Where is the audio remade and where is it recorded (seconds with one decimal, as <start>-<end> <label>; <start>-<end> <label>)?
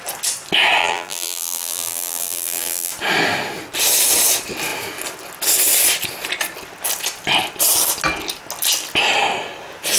0.0-0.8 recorded; 0.8-2.9 remade; 2.9-10.0 recorded